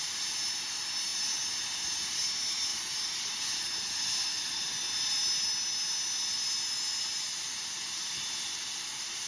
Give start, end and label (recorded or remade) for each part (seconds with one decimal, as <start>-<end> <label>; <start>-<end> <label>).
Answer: 0.0-9.3 recorded